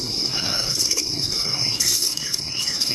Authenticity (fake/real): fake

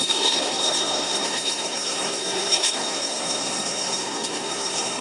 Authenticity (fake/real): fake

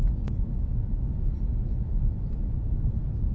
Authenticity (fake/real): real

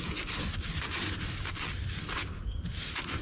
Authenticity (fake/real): real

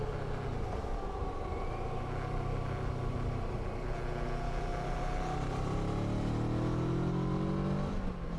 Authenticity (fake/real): real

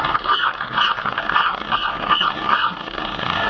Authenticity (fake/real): fake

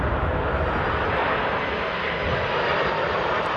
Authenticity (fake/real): real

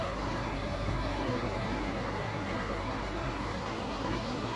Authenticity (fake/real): fake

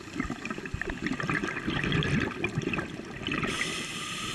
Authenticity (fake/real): real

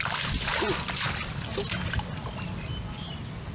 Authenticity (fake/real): real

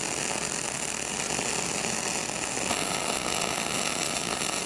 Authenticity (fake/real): real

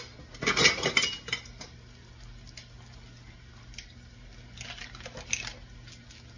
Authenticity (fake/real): real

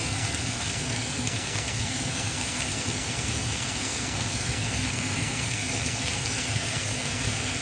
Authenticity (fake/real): fake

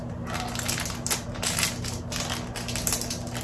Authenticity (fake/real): real